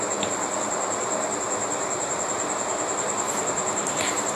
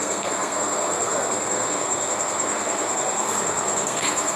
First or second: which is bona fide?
first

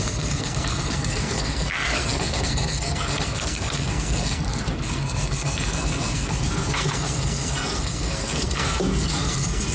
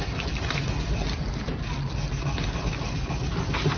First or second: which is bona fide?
second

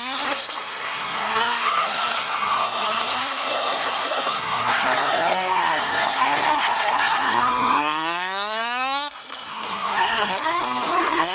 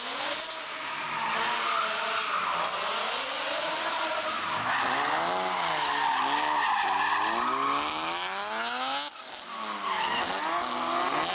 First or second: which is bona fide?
second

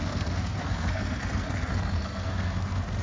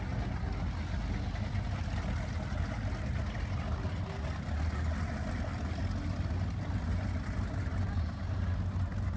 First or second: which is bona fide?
second